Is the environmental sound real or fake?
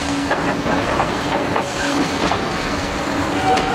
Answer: fake